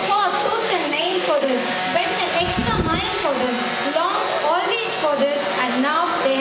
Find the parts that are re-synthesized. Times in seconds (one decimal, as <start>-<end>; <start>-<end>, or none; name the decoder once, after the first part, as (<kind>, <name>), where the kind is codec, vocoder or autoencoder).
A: 0.0-2.2 (codec, DAC)